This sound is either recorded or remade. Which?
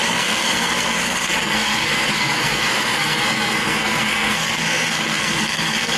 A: remade